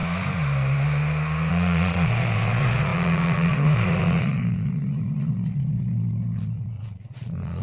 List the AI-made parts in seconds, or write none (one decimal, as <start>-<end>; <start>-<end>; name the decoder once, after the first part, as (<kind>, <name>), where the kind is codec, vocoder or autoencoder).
1.5-7.6 (vocoder, Vocos)